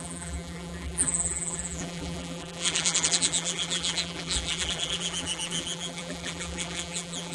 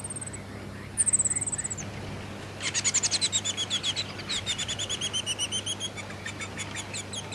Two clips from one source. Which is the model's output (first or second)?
first